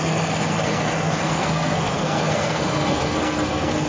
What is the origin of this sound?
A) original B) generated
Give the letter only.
B